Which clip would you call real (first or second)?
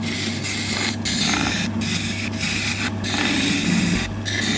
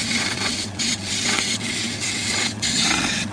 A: first